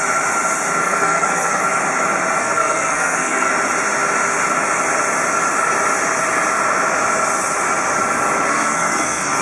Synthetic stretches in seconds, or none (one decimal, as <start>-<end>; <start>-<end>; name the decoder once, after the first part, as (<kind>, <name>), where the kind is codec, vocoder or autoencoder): 0.8-1.6 (codec, SNAC); 2.4-3.5; 8.5-9.4